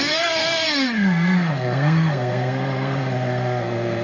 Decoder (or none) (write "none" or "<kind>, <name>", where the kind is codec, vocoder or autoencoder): codec, SNAC